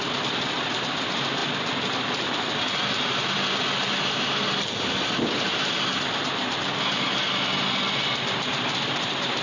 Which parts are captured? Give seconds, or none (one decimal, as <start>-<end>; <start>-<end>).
0.0-9.4